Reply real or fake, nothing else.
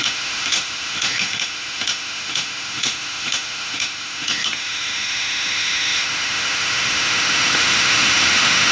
fake